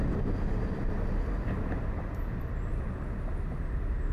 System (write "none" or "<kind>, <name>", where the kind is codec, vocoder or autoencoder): none